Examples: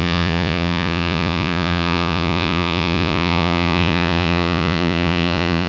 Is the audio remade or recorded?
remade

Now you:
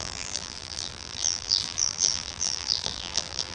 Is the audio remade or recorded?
remade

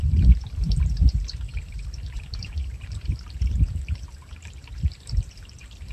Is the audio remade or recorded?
remade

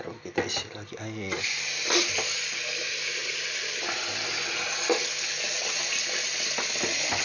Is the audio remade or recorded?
recorded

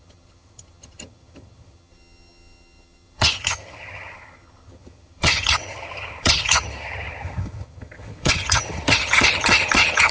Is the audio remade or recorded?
remade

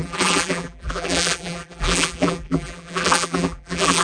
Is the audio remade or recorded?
remade